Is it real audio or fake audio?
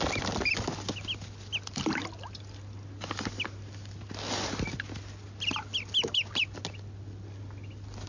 real